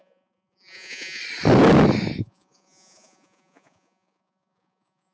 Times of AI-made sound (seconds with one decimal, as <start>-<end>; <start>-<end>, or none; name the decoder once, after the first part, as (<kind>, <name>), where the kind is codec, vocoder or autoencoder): 0.0-1.2 (vocoder, Vocos); 2.2-5.1